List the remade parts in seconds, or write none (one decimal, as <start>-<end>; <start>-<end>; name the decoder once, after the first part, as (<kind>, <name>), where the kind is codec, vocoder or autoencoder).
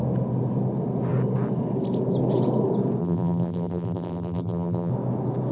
3.0-4.9 (vocoder, BigVGAN v2)